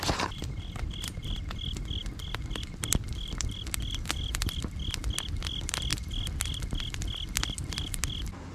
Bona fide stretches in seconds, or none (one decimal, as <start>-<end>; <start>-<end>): 0.0-8.5